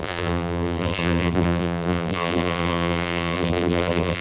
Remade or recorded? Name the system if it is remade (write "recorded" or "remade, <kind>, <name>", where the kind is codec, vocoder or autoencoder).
remade, vocoder, BigVGAN v2